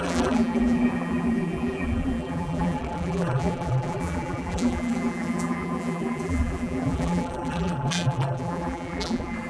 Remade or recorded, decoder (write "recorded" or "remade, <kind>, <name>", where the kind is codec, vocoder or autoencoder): remade, vocoder, BigVGAN v2